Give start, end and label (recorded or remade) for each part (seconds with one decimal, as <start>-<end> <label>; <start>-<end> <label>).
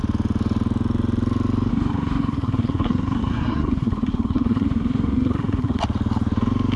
0.0-1.7 recorded; 1.7-5.8 remade; 5.8-6.8 recorded